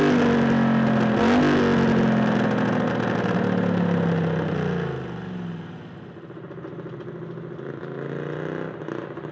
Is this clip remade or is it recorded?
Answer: recorded